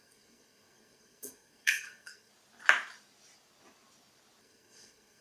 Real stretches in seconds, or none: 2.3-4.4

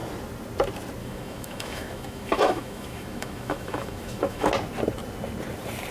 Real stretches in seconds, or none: 0.0-1.0; 4.5-5.9

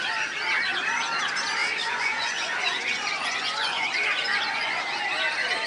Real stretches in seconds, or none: 0.0-1.6; 4.8-5.7

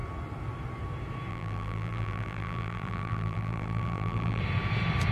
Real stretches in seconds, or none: 0.0-1.3; 4.4-5.1

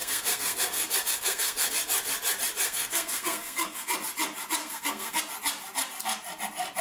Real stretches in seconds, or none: 1.7-2.6; 3.9-4.6; 5.2-6.8

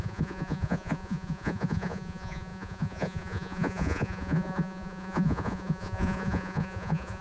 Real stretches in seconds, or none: none

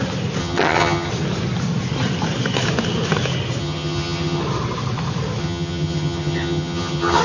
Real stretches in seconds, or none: 0.0-0.4; 1.1-3.6; 4.4-5.4

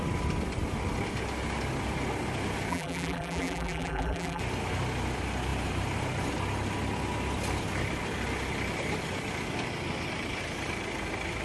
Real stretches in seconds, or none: 0.0-2.7; 4.4-11.4